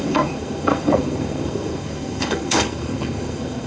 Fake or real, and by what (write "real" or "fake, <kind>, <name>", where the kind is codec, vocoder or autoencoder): fake, codec, SNAC